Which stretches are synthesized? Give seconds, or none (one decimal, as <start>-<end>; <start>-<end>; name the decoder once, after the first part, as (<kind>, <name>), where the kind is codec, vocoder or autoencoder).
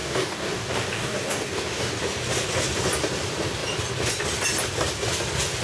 0.0-2.0 (codec, DAC)